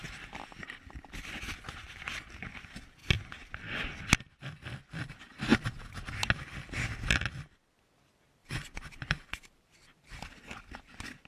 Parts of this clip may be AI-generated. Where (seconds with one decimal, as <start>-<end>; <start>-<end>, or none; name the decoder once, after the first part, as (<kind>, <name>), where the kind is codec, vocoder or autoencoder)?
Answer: 5.5-6.1 (vocoder, BigVGAN v2); 8.4-9.7

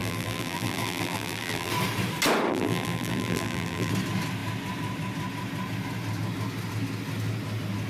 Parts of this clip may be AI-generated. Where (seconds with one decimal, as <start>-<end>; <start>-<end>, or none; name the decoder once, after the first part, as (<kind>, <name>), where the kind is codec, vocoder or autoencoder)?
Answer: 0.0-1.7 (vocoder, BigVGAN v2); 2.5-3.9